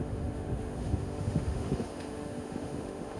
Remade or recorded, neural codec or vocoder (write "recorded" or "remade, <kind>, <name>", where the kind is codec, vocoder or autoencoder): remade, autoencoder, DAC-VAE